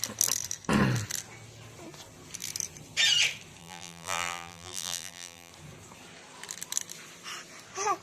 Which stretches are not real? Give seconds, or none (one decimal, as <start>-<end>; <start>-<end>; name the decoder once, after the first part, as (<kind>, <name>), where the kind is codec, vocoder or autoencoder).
3.6-5.5 (vocoder, BigVGAN v2)